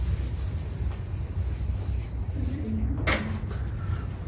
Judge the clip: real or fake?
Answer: real